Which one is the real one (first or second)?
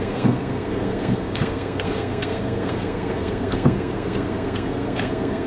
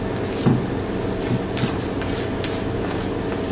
second